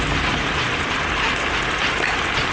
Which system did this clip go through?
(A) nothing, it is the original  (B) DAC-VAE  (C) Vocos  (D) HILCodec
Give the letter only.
A